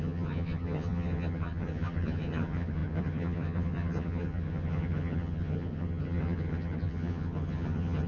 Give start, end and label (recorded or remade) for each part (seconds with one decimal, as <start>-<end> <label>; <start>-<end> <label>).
0.0-8.1 remade